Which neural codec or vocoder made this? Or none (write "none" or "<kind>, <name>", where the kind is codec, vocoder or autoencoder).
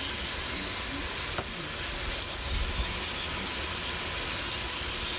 none